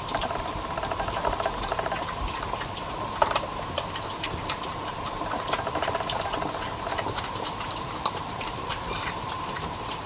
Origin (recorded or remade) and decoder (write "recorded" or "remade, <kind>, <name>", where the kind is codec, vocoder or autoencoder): remade, vocoder, BigVGAN v2